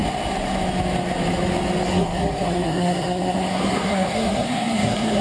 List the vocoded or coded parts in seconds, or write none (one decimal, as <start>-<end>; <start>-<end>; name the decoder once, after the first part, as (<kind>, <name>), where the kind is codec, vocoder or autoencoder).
1.9-5.2 (codec, SNAC)